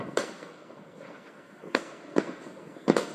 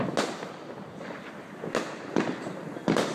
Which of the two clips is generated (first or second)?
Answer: first